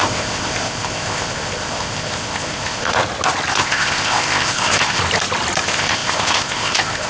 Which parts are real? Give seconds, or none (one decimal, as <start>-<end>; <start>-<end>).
3.0-3.5; 5.0-5.6

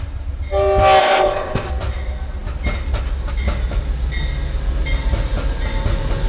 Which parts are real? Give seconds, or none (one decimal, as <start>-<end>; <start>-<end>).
0.0-1.0; 1.7-6.3

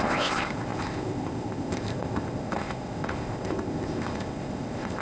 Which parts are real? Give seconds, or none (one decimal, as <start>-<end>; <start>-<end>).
none

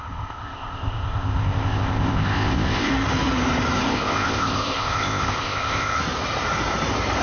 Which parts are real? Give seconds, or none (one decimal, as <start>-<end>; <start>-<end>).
2.9-3.8; 6.0-7.2

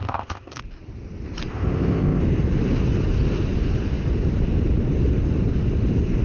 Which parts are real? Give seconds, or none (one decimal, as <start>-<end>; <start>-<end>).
0.6-1.5; 2.2-6.2

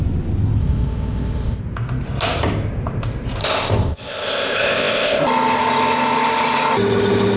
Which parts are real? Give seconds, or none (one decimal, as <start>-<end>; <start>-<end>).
0.0-0.6; 1.6-3.4; 5.2-7.4

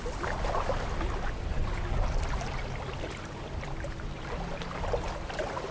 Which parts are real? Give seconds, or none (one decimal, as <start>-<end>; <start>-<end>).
0.0-5.7